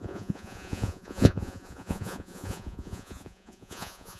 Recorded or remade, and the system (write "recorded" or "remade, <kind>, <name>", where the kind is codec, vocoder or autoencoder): remade, vocoder, Vocos